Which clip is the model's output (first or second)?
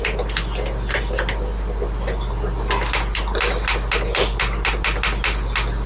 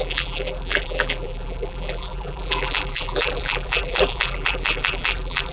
second